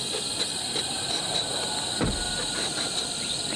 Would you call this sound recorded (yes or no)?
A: yes